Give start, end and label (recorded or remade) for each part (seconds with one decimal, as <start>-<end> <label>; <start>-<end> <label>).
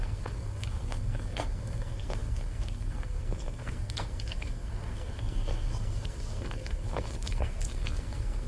0.0-8.5 remade